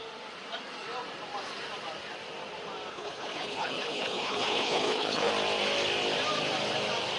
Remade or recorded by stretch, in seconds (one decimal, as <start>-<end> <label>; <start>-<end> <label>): 0.0-2.9 recorded; 2.9-5.3 remade; 5.3-7.2 recorded